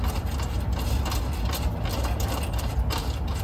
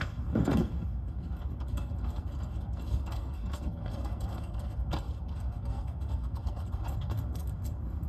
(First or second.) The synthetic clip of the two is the second